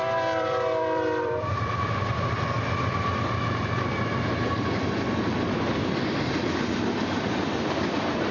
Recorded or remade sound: remade